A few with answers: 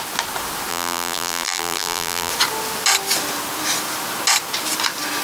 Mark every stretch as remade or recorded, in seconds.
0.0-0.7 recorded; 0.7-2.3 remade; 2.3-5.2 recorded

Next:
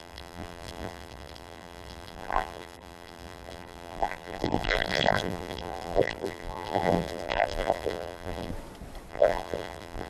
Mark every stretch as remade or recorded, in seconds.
0.0-8.5 remade; 8.5-9.1 recorded; 9.1-10.1 remade

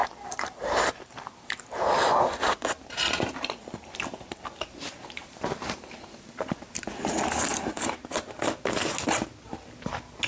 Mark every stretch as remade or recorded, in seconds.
0.0-1.8 remade; 1.8-5.2 recorded; 5.2-5.8 remade; 5.8-7.5 recorded; 7.5-8.4 remade; 8.4-10.3 recorded

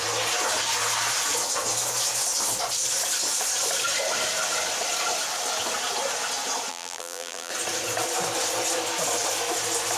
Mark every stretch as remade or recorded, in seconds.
0.0-6.7 recorded; 6.7-7.5 remade; 7.5-10.0 recorded

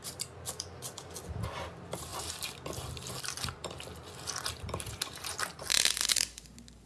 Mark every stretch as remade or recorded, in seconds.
0.0-1.7 recorded; 1.7-2.1 remade; 2.1-4.5 recorded; 4.5-6.9 remade